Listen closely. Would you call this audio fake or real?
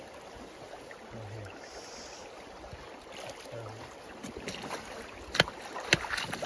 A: real